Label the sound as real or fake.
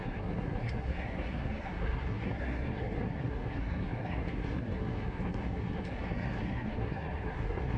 fake